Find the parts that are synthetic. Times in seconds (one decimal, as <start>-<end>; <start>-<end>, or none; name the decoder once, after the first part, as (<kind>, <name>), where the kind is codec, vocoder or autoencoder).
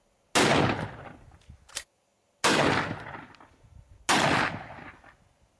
none